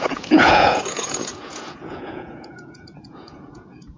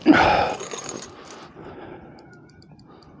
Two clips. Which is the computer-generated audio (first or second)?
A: first